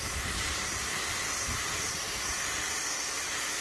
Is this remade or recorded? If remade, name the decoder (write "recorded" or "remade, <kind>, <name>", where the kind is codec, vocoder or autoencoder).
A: recorded